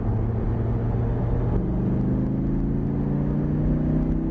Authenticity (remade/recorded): recorded